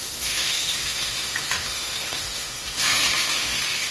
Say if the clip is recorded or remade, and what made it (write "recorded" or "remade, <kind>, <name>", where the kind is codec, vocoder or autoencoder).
remade, autoencoder, DAC-VAE